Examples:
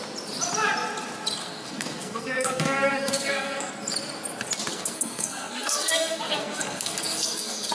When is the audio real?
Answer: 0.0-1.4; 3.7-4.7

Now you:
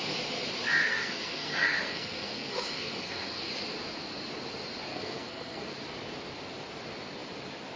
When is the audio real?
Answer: 0.0-0.8; 3.5-4.9; 5.7-7.8

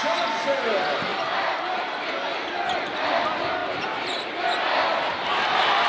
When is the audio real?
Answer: 0.0-5.9